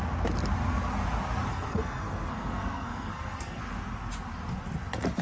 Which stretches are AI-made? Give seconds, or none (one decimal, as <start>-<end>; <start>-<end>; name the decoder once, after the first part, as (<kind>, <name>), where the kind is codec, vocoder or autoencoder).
1.5-3.6 (codec, SNAC)